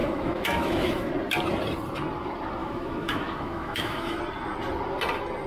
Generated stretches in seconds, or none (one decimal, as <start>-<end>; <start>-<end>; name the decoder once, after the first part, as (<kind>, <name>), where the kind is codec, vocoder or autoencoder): 0.0-1.1 (autoencoder, DAC-VAE); 2.6-4.2